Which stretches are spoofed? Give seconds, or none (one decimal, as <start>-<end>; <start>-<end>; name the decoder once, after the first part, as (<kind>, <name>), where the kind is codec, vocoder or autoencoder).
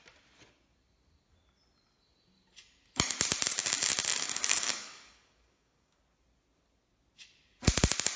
4.1-6.0 (codec, DAC)